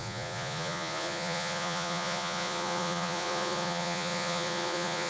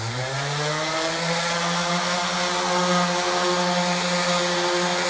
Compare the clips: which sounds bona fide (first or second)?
second